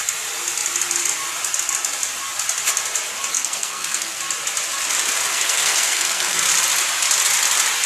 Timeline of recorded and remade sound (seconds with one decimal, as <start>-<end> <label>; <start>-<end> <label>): 0.0-3.3 recorded; 3.3-4.2 remade; 4.2-5.3 recorded; 5.3-6.4 remade; 6.4-7.9 recorded